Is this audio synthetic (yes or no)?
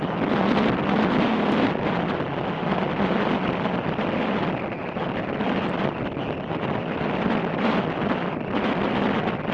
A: no